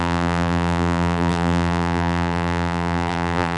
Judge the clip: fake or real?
fake